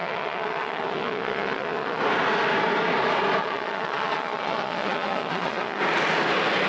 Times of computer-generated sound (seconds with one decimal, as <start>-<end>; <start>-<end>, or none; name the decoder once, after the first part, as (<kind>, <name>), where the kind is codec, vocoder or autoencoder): 0.0-2.0 (vocoder, Vocos); 3.4-5.8